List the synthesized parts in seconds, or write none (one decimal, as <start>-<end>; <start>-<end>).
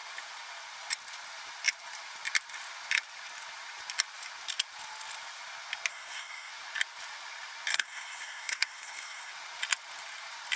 5.9-6.5; 7.7-9.3